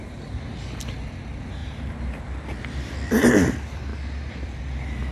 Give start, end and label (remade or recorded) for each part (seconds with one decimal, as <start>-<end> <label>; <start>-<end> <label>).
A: 0.0-1.0 remade; 1.0-1.6 recorded; 1.6-2.2 remade; 2.2-3.9 recorded; 3.9-4.6 remade; 4.6-5.1 recorded